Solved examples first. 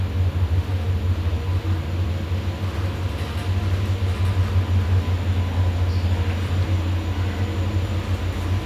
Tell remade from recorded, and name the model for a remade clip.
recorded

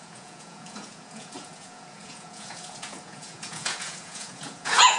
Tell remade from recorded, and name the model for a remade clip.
remade, vocoder, Vocos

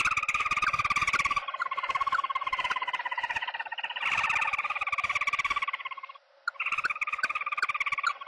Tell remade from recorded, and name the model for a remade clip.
recorded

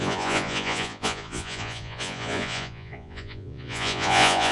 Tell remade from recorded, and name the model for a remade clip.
remade, vocoder, Vocos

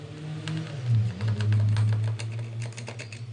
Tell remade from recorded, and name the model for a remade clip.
recorded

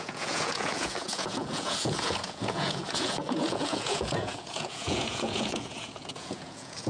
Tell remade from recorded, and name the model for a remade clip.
remade, vocoder, Vocos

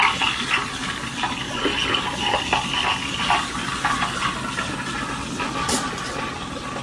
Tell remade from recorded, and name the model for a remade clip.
recorded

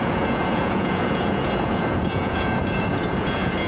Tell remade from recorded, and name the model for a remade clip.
remade, vocoder, Vocos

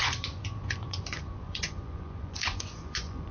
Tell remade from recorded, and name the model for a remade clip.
remade, vocoder, Vocos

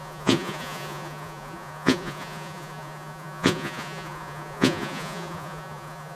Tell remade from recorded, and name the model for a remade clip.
remade, vocoder, Vocos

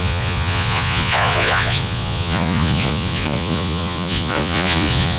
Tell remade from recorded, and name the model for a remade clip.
remade, vocoder, Vocos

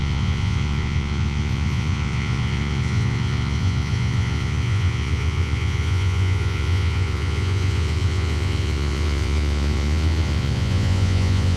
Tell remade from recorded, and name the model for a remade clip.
remade, vocoder, Vocos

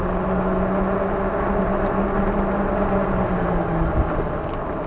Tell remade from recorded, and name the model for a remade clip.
recorded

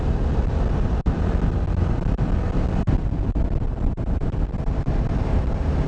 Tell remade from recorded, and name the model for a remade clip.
recorded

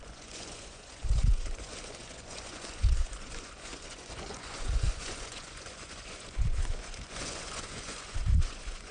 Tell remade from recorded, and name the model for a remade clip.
remade, vocoder, Vocos